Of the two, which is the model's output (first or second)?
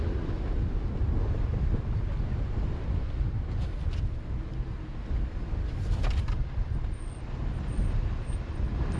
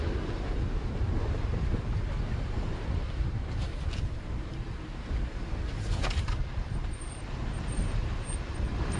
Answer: second